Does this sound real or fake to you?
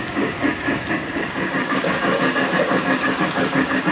fake